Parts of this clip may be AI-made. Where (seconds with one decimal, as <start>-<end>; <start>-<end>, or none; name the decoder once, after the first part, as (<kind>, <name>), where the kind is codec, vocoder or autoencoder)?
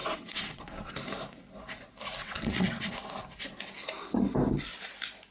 0.0-0.9 (vocoder, WaveNeXt); 2.2-2.9